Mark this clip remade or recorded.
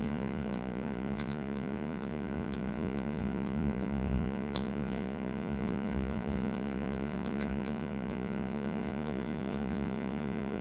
remade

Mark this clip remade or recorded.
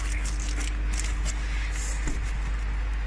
recorded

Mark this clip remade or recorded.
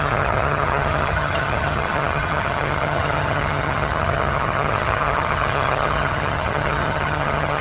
remade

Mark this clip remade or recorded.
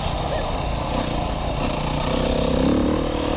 recorded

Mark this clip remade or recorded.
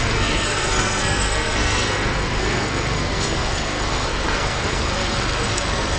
remade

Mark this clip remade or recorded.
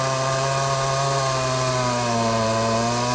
recorded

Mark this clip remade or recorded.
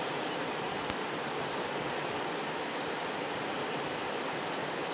recorded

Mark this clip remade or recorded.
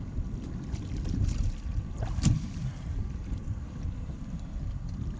remade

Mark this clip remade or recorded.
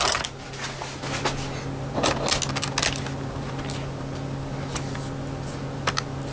recorded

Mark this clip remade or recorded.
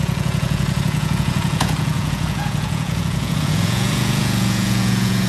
remade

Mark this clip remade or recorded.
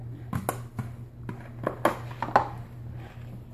recorded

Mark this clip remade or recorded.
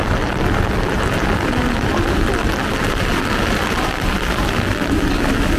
recorded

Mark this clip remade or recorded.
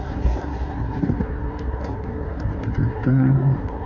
remade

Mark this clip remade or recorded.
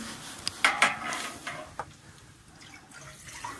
recorded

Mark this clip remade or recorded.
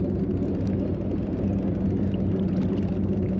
recorded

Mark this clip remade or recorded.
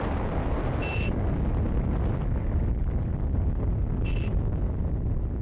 recorded